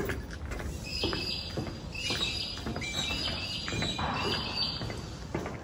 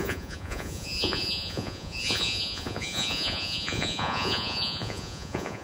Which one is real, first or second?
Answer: first